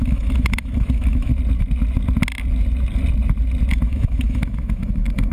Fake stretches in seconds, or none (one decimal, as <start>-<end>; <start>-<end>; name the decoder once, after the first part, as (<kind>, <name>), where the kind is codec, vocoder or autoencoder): 0.0-1.3 (autoencoder, DAC-VAE); 3.7-5.3